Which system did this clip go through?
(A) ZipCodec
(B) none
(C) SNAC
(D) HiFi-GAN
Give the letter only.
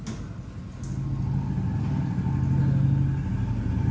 B